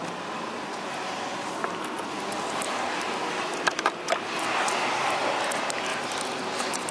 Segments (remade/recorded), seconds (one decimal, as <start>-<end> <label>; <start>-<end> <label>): 0.0-6.9 recorded